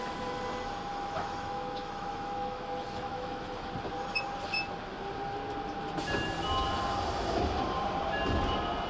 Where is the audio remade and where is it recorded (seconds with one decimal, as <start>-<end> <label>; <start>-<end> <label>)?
0.0-0.9 recorded; 0.9-3.7 remade; 3.7-8.9 recorded